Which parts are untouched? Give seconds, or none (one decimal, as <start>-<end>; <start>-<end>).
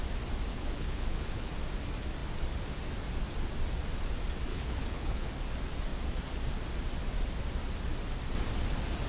0.0-0.5; 1.5-4.5; 5.3-9.1